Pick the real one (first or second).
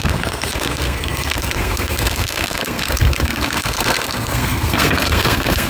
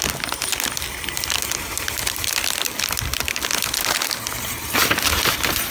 second